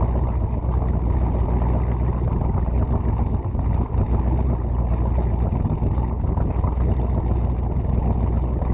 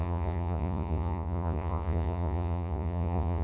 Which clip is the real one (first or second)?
first